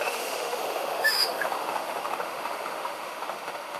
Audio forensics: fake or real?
fake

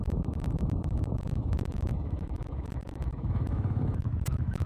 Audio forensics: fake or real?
fake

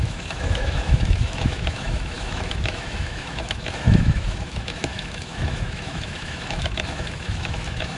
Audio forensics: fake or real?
fake